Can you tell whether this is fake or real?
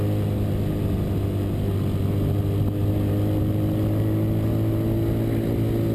real